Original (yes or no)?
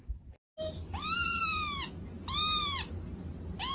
yes